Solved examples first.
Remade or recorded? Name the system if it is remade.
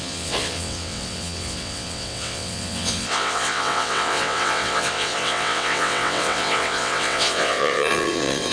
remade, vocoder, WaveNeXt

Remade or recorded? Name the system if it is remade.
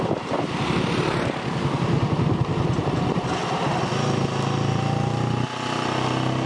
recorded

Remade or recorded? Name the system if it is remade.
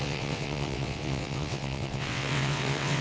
remade, vocoder, WaveNeXt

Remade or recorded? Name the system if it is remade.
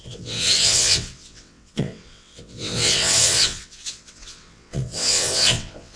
remade, vocoder, WaveNeXt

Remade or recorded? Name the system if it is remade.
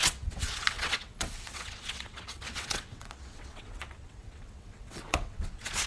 remade, vocoder, WaveNeXt